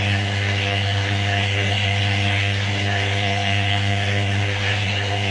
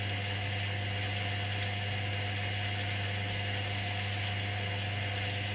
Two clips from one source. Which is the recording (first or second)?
second